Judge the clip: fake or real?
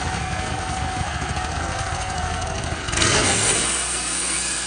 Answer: fake